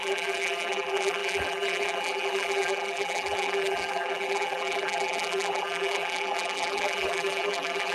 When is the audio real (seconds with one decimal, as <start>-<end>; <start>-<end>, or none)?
none